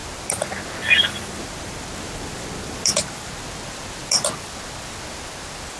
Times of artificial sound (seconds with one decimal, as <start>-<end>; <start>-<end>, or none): none